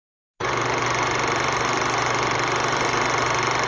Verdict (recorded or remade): recorded